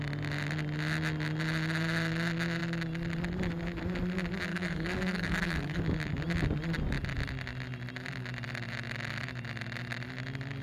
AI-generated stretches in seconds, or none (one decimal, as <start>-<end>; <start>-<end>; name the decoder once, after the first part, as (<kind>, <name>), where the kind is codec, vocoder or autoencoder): 4.5-5.8 (codec, DAC)

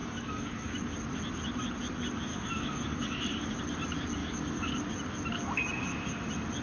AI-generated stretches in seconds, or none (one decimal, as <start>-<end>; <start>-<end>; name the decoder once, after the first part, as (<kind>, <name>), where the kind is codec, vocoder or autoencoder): 0.0-0.7 (codec, DAC); 2.3-3.6; 4.2-4.7

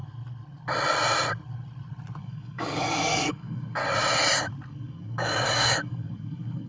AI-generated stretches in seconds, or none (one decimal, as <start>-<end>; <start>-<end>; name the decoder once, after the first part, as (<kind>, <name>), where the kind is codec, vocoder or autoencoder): 2.2-3.8 (codec, DAC); 4.7-6.7

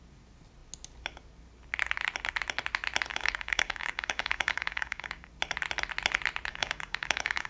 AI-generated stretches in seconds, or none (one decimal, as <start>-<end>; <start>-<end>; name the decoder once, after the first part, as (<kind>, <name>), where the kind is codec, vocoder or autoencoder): 3.1-5.3 (codec, DAC); 6.5-7.5

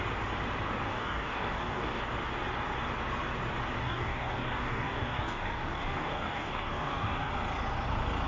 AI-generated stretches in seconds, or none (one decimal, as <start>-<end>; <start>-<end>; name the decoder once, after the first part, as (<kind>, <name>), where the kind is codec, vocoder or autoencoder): 0.9-2.0 (codec, DAC); 3.8-7.3

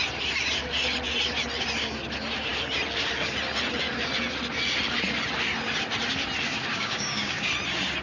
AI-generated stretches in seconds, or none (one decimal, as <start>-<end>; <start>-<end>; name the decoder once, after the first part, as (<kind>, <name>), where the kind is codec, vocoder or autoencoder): 6.7-7.5 (codec, DAC)